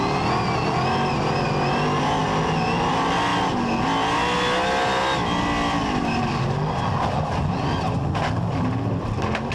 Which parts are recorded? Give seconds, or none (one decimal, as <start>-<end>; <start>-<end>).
0.0-9.5